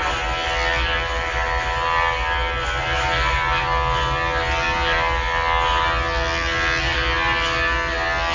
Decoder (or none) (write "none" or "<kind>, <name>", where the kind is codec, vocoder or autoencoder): none